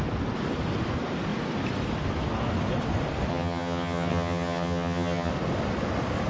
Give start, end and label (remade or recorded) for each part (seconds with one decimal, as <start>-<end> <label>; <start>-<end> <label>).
0.0-3.3 recorded; 3.3-5.3 remade; 5.3-6.3 recorded